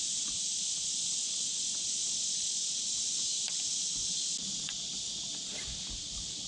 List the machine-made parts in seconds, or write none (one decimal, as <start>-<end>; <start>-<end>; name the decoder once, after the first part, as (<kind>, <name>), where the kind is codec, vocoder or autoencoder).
none